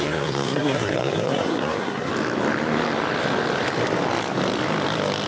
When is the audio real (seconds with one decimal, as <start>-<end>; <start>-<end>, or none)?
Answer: 2.1-5.3

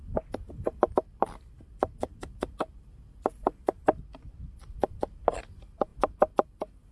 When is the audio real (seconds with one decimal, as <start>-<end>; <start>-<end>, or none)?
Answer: 0.0-6.9

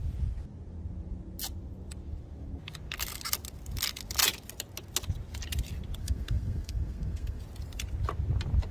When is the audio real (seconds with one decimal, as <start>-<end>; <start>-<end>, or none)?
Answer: 0.0-6.0; 7.4-8.7